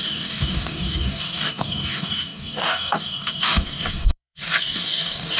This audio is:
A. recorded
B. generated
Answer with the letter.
B